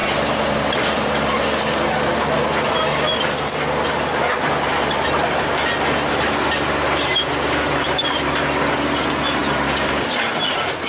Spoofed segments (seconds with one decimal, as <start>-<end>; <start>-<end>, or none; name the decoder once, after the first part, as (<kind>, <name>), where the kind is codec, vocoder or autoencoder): none